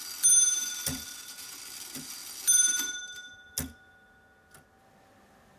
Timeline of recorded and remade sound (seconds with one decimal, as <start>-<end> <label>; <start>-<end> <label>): 0.0-1.1 recorded; 1.1-1.6 remade; 1.6-5.6 recorded